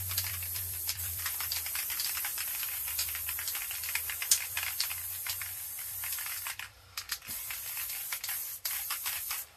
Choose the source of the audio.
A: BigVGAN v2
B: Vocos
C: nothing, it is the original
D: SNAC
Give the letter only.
A